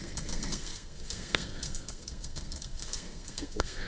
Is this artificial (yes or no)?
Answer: yes